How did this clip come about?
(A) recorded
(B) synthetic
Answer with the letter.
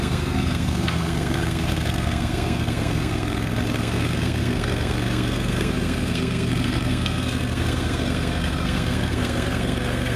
B